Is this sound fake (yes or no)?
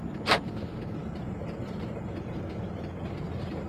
yes